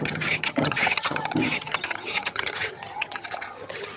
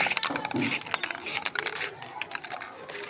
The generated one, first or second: first